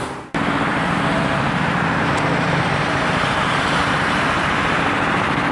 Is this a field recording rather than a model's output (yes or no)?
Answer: no